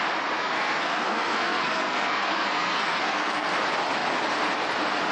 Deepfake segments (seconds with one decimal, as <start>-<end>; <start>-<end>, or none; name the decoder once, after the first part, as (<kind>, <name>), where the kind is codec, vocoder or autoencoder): 0.4-3.5 (codec, SNAC)